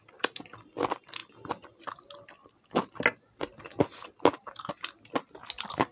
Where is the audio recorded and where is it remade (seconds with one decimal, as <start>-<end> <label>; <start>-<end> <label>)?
0.0-5.9 recorded